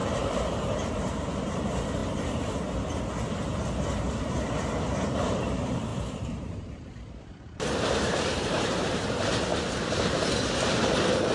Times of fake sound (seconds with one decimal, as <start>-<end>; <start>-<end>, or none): 0.0-2.0; 4.8-11.3